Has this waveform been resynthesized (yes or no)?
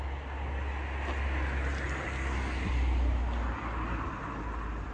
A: no